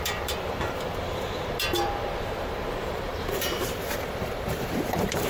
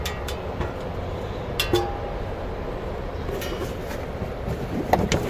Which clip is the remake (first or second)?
first